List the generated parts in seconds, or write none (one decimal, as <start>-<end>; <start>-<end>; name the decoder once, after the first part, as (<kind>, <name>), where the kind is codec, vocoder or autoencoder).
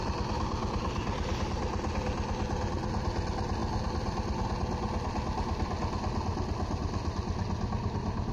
none